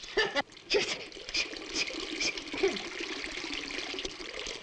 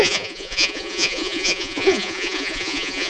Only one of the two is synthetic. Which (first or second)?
second